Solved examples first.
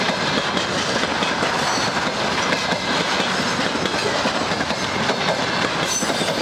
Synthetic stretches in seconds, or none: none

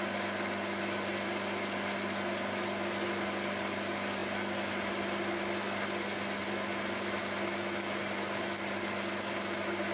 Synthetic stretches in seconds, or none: none

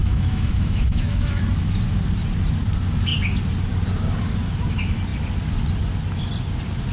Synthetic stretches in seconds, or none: 0.0-1.4

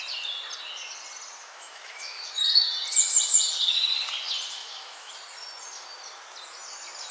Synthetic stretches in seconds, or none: 1.4-2.7; 4.6-5.1